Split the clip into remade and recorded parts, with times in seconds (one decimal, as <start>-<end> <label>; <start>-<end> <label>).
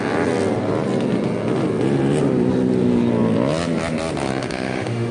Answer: 0.0-4.4 recorded; 4.4-5.1 remade